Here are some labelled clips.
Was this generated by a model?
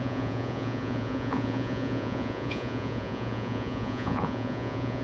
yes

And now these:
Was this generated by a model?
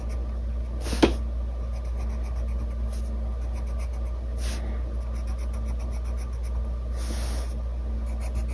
no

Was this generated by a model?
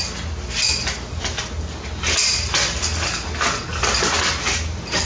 no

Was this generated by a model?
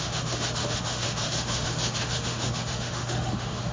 yes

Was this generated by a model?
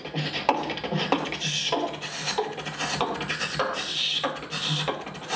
no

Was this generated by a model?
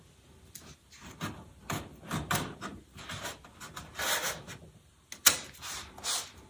no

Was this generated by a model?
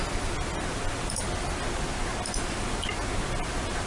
no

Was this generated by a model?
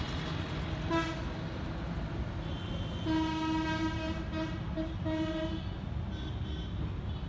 no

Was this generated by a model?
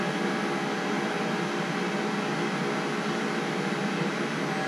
no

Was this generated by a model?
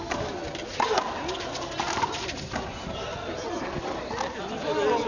no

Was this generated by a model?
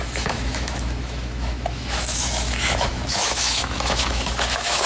yes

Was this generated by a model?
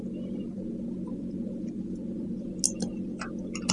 no